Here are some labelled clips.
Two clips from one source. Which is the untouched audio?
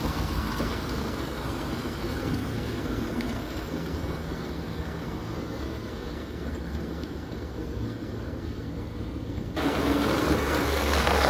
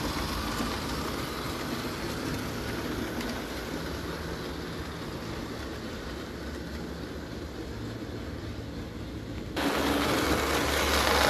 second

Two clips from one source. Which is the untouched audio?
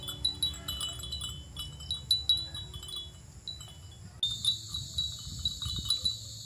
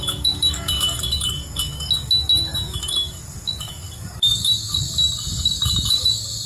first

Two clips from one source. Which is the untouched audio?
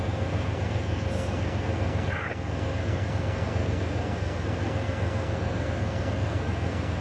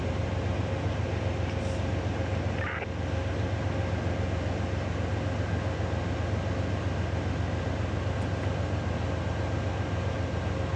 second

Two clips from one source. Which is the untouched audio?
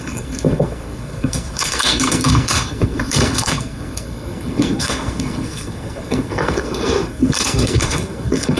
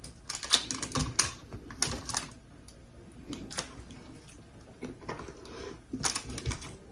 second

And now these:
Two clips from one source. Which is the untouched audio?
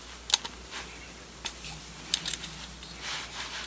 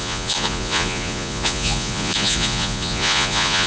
first